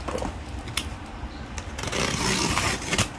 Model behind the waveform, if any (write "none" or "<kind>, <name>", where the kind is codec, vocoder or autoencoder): none